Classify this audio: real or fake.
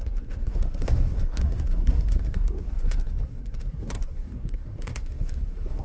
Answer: fake